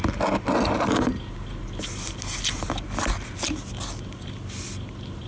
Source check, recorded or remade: recorded